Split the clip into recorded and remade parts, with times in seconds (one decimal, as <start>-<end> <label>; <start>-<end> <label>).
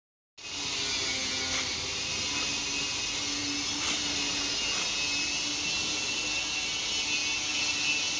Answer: 0.0-8.2 recorded